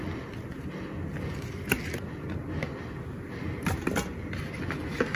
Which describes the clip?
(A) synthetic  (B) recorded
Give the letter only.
B